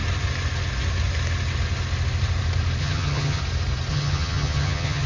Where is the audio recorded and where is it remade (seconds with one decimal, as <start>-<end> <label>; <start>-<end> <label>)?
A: 0.0-2.8 recorded; 2.8-3.4 remade; 3.4-3.9 recorded; 3.9-5.1 remade